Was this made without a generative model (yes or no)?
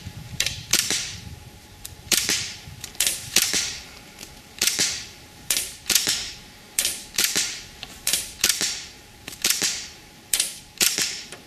no